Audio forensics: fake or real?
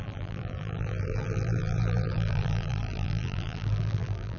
fake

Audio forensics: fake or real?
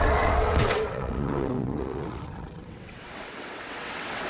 fake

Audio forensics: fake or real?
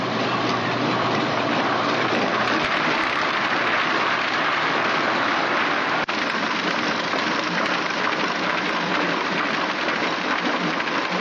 fake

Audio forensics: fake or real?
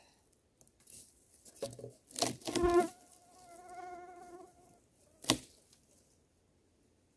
real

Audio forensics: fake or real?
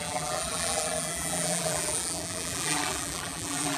fake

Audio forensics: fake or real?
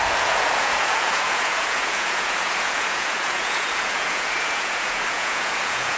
fake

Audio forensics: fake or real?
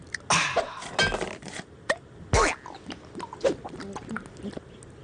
real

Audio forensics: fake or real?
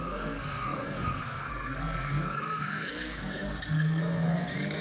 fake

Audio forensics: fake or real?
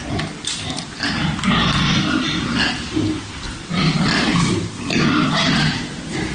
real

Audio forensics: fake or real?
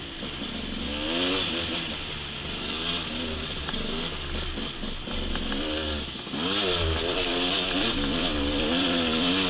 real